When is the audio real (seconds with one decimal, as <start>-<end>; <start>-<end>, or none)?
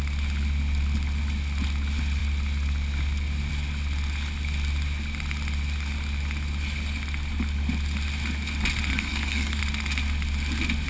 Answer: 0.0-8.9; 9.6-10.9